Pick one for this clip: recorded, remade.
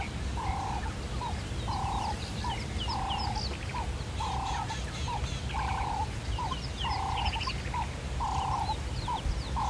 recorded